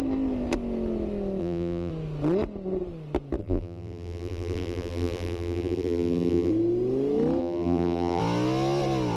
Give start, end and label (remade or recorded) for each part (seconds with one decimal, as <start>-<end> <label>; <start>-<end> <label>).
0.0-1.4 recorded; 1.4-1.9 remade; 1.9-3.4 recorded; 3.4-6.5 remade; 6.5-7.4 recorded; 7.4-8.2 remade; 8.2-9.2 recorded